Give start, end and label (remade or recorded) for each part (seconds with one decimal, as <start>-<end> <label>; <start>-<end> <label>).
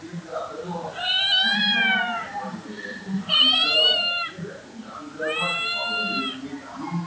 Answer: 0.0-1.1 recorded; 1.1-5.4 remade; 5.4-7.1 recorded